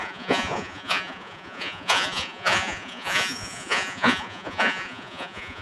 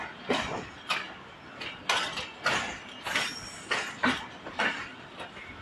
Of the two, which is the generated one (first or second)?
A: first